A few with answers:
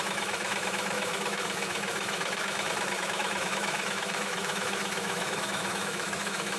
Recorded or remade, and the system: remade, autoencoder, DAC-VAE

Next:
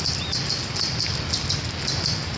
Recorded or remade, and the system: recorded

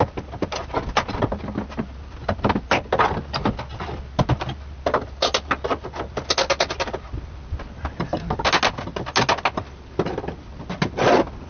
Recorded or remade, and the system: recorded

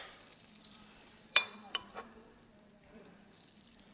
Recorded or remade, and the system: remade, vocoder, BigVGAN v2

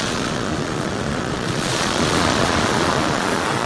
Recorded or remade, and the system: remade, vocoder, Vocos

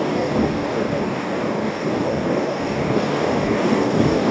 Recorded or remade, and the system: remade, codec, DAC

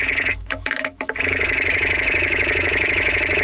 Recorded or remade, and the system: remade, autoencoder, DAC-VAE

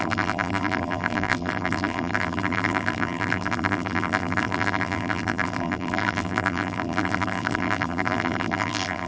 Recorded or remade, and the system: remade, vocoder, BigVGAN v2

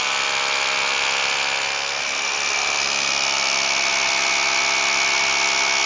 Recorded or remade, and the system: recorded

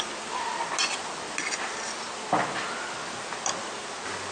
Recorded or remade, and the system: recorded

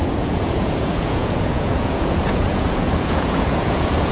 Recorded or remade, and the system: remade, vocoder, Vocos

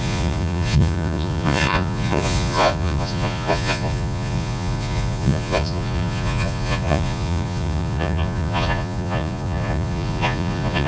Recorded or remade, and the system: remade, vocoder, Vocos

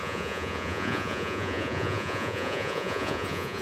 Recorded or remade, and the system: remade, vocoder, Vocos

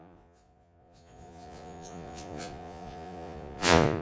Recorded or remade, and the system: remade, vocoder, Vocos